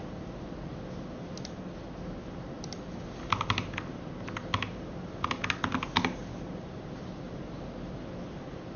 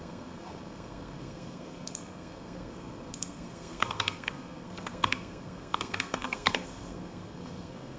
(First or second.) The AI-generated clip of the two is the second